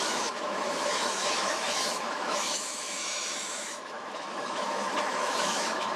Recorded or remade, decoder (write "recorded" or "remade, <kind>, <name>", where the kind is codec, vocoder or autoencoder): remade, autoencoder, DAC-VAE